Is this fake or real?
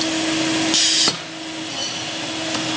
real